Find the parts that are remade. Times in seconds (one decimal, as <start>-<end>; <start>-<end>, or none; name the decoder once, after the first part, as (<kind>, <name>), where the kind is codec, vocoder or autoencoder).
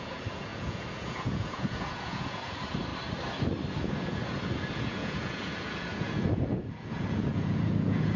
0.0-2.9 (vocoder, Vocos); 3.8-8.2